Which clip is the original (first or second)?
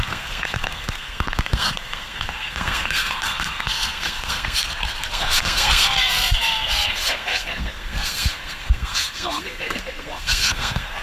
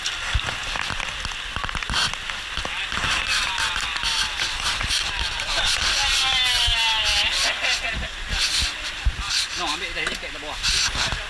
second